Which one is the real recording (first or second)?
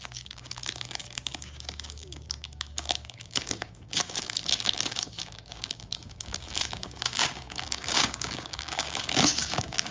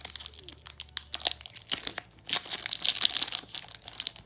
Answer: second